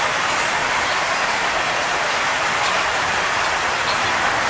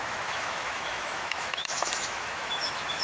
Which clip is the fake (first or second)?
second